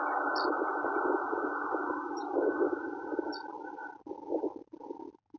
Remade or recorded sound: recorded